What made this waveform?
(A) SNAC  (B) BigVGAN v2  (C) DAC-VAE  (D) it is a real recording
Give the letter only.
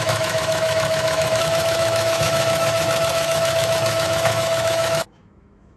C